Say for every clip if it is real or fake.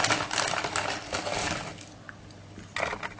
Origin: real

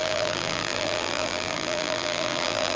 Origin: fake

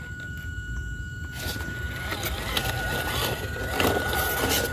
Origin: real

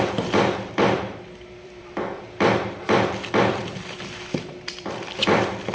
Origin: fake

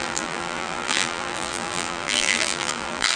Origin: fake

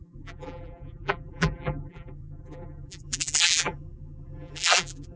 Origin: fake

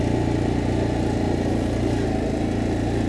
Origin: real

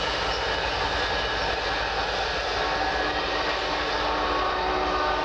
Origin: fake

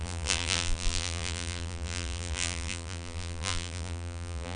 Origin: fake